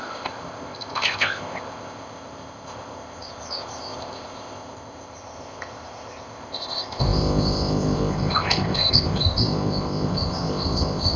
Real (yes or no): no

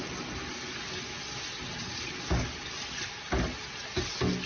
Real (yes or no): yes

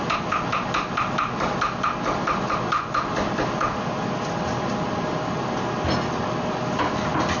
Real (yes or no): yes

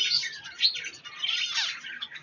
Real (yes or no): yes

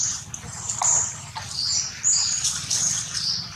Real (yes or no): no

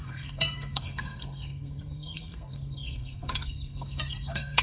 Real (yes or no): no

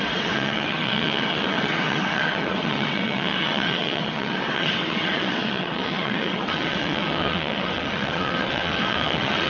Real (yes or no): no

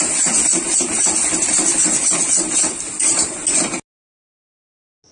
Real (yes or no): yes